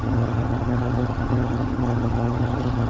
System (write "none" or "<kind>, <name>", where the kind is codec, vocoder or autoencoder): vocoder, HiFi-GAN